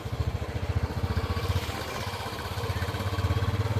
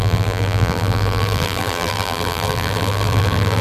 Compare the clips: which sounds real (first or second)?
first